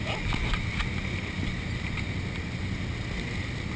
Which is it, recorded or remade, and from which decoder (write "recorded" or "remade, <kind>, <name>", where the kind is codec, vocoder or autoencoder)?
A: recorded